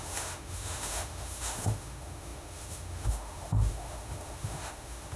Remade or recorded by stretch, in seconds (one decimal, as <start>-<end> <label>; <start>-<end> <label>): 0.0-5.2 remade